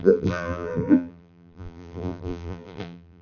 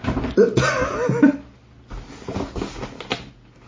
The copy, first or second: first